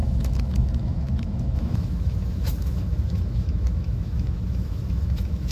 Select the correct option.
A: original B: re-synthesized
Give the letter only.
B